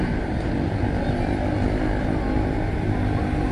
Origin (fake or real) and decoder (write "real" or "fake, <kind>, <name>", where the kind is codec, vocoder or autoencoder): real